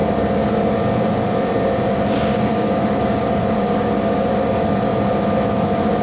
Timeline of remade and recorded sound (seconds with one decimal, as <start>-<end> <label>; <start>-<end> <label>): 0.0-2.1 recorded; 2.1-4.9 remade; 4.9-5.5 recorded; 5.5-6.0 remade